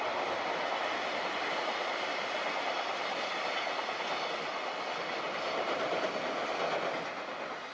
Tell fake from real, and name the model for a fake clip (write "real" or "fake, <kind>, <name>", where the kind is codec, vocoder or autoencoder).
real